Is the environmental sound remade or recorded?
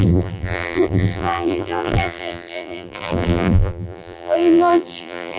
remade